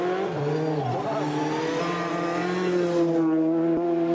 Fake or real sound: real